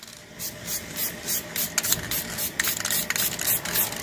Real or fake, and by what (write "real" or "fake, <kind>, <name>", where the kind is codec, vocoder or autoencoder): real